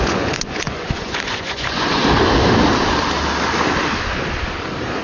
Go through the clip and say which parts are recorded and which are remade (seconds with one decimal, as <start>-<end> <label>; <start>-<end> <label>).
0.0-2.0 remade; 2.0-5.0 recorded